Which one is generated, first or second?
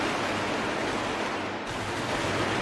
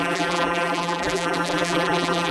second